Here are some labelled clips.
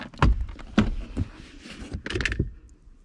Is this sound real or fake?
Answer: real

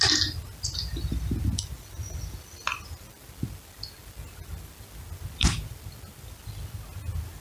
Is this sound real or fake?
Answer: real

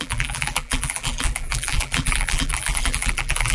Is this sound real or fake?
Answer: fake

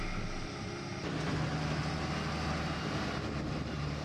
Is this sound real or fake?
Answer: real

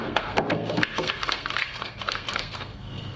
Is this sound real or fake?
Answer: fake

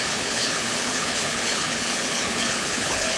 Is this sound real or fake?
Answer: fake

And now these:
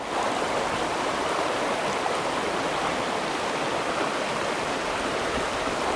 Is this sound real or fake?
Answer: real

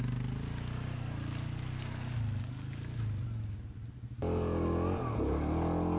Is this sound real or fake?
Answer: real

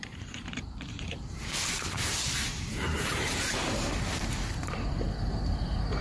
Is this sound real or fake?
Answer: fake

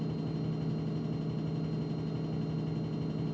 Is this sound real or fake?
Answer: real